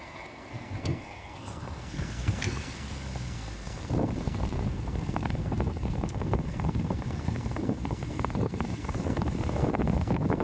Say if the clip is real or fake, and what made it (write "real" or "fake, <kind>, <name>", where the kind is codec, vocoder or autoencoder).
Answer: fake, codec, SNAC